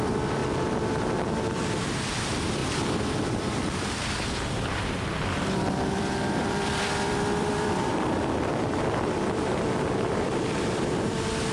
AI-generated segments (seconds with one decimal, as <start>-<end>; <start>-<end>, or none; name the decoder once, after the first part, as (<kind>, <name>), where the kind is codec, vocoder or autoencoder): 0.0-0.4 (vocoder, BigVGAN v2); 1.6-2.6; 3.3-11.5